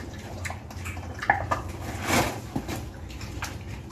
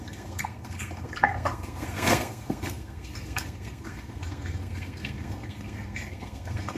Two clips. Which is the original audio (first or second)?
first